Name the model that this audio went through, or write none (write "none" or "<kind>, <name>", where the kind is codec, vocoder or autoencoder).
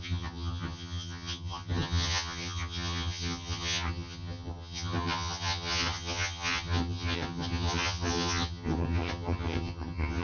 vocoder, HiFi-GAN